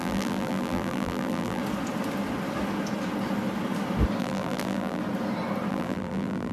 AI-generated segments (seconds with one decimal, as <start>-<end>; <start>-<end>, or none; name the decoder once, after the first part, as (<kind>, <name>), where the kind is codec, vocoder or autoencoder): 0.0-1.6 (vocoder, BigVGAN v2); 4.2-5.0; 5.7-6.5